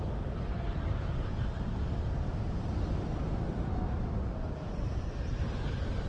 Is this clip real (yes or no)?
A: yes